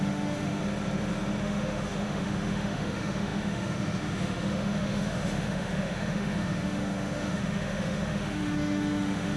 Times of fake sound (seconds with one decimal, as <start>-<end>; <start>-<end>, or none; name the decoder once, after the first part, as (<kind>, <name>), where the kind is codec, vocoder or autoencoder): 0.0-0.6 (autoencoder, DAC-VAE); 1.4-9.4